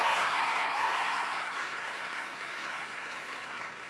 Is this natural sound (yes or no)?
no